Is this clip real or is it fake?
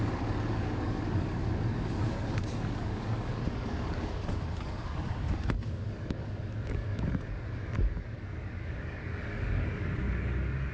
fake